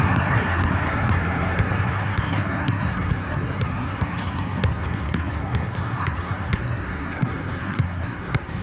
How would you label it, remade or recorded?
remade